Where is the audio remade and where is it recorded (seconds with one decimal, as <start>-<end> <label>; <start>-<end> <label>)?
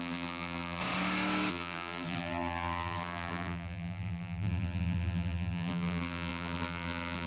0.0-0.8 remade; 0.8-1.5 recorded; 1.5-7.3 remade